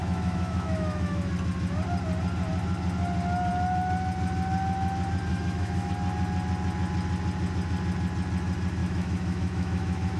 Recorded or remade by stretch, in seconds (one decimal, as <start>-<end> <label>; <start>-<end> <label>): 0.0-1.3 remade; 1.3-5.3 recorded; 5.3-5.9 remade; 5.9-8.8 recorded; 8.8-10.2 remade

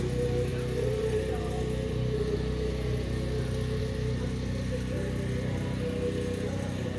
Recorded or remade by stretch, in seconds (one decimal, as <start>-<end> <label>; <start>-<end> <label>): 0.0-7.0 recorded

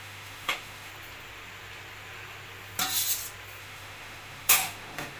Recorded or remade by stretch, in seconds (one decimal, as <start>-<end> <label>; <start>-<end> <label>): 0.0-0.9 remade; 0.9-3.6 recorded; 3.6-5.2 remade